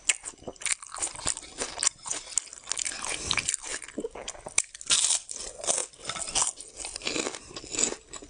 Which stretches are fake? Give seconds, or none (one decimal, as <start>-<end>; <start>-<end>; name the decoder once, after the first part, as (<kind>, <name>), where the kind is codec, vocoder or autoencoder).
none